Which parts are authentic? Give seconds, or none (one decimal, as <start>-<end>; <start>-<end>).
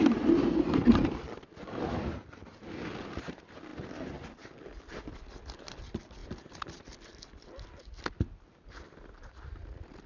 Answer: 0.0-10.1